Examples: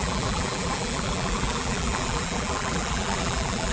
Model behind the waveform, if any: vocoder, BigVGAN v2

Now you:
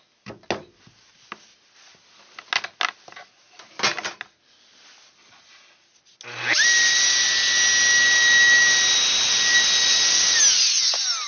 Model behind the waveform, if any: none